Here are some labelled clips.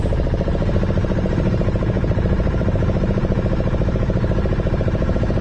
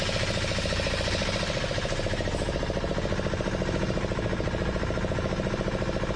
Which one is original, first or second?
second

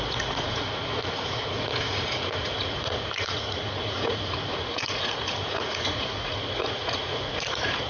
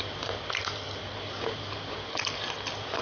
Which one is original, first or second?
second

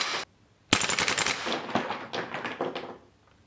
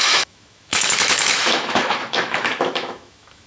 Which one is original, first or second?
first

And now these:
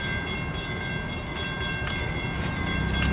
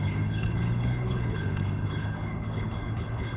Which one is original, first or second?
first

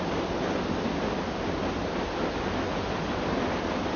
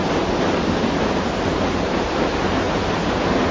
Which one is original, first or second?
first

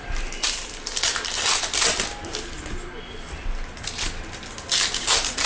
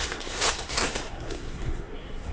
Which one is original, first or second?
first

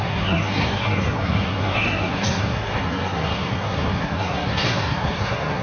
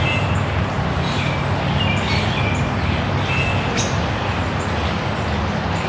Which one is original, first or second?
second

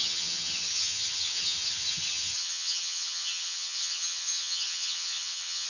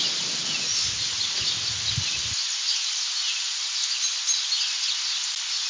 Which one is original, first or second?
second